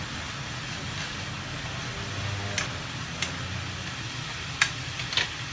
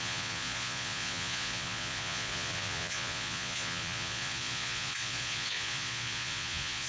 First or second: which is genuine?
first